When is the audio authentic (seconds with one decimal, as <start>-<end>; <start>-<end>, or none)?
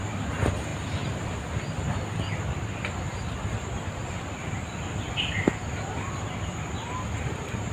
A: 0.0-7.7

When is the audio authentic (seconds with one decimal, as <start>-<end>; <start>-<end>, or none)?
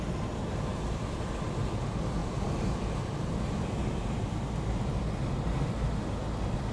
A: 0.0-0.7; 1.3-6.7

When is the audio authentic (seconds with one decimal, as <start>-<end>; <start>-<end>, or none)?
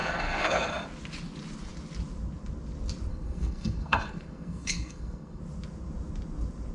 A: 0.7-3.1; 5.4-6.7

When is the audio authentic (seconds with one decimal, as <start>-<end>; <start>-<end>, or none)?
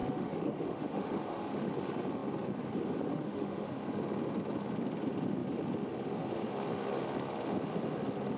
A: 1.7-3.1; 3.7-8.4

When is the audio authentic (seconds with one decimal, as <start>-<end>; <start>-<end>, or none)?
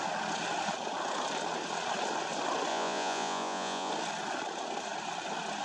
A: 0.0-2.7; 3.9-5.6